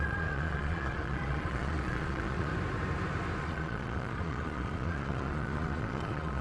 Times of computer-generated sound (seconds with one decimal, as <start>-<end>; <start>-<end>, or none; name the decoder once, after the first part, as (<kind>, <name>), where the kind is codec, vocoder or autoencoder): 0.0-2.5 (vocoder, Vocos); 3.4-6.4

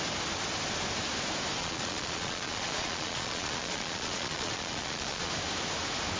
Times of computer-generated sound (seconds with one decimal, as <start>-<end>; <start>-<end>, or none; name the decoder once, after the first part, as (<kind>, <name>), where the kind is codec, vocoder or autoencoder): 1.6-5.3 (vocoder, Vocos)

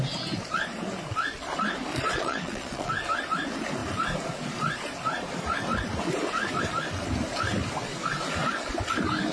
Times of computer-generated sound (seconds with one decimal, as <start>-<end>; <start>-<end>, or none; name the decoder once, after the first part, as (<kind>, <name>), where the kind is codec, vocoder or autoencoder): 1.9-2.9 (vocoder, Vocos)

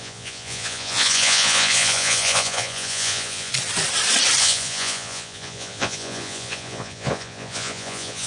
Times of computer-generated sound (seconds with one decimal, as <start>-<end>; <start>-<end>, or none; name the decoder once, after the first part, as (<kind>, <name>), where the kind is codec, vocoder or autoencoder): 0.0-3.5 (vocoder, Vocos); 4.4-8.3

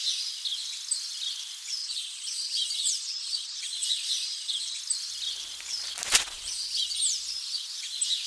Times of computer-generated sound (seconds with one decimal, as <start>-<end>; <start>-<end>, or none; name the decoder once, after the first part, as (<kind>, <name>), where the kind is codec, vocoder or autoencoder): 1.8-4.8 (vocoder, Vocos)